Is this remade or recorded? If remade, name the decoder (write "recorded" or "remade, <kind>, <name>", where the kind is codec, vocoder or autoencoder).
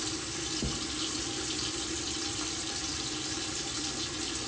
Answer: remade, vocoder, BigVGAN v2